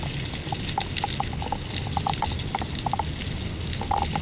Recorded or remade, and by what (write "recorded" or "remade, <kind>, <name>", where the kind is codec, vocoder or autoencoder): recorded